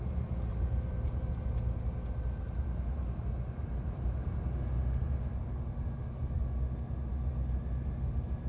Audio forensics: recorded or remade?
recorded